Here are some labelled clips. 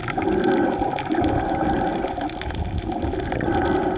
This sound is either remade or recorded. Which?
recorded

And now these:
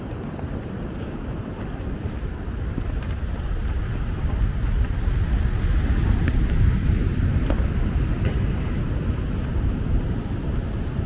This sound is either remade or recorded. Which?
recorded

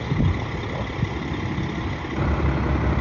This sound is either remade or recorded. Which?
recorded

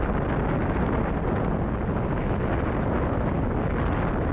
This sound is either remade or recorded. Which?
recorded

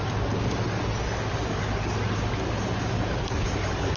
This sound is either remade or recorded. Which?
recorded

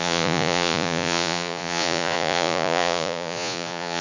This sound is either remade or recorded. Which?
remade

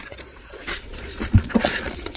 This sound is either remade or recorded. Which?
remade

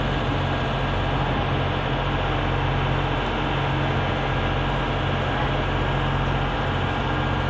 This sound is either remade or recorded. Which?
recorded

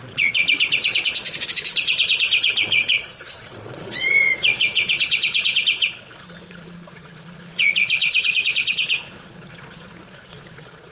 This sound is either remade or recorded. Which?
remade